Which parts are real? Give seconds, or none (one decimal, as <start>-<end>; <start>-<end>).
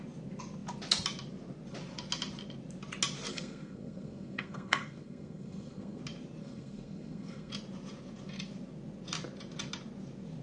0.0-3.3; 6.0-6.4; 7.5-10.4